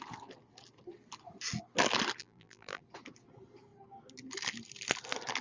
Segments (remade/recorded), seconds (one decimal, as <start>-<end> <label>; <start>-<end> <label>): 0.0-2.2 recorded; 2.2-2.8 remade; 2.8-5.4 recorded